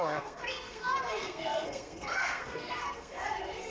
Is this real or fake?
fake